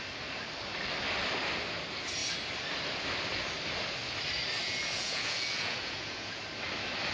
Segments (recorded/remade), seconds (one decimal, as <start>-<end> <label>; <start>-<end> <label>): 0.0-4.6 recorded; 4.6-6.4 remade; 6.4-7.1 recorded